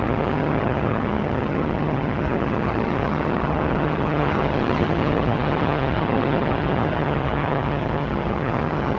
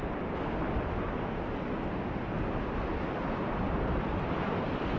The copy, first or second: first